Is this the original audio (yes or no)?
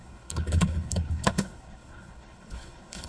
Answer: no